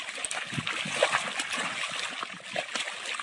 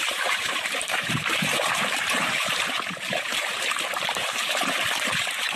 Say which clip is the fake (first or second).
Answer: second